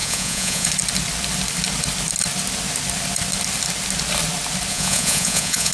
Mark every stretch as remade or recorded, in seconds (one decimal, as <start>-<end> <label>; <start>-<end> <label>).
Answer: 0.0-0.7 remade; 0.7-4.7 recorded; 4.7-5.7 remade